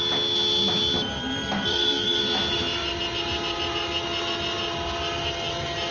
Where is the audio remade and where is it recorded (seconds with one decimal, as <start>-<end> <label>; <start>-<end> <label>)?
0.0-1.7 recorded; 1.7-2.2 remade; 2.2-5.9 recorded